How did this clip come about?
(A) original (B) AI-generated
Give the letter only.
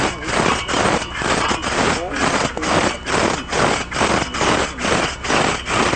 A